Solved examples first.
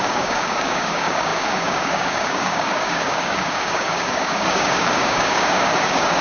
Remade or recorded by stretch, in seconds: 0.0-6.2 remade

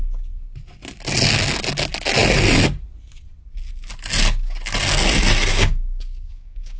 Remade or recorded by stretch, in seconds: 0.0-5.5 recorded; 5.5-6.8 remade

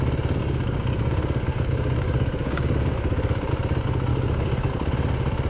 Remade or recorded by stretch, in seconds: 0.0-0.4 recorded; 0.4-3.5 remade; 3.5-4.1 recorded; 4.1-4.7 remade; 4.7-5.5 recorded

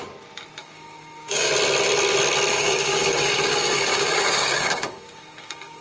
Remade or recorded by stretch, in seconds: 0.0-0.6 recorded; 0.6-1.5 remade; 1.5-2.5 recorded; 2.5-5.8 remade

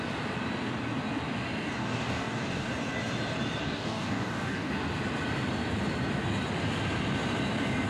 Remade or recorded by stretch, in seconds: 0.0-1.8 recorded; 1.8-2.7 remade; 2.7-3.6 recorded; 3.6-4.7 remade; 4.7-7.9 recorded